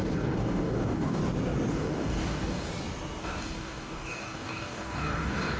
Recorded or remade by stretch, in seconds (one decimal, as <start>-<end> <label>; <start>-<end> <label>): 0.0-1.2 remade; 1.2-1.7 recorded; 1.7-2.7 remade; 2.7-3.2 recorded; 3.2-5.6 remade